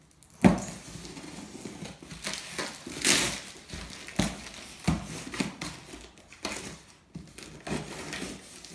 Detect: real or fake real